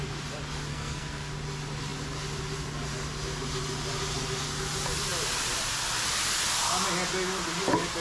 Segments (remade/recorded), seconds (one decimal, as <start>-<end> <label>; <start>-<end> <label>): 0.0-0.7 recorded; 0.7-1.3 remade; 1.3-8.0 recorded